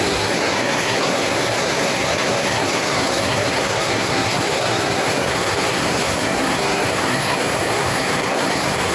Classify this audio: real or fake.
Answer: fake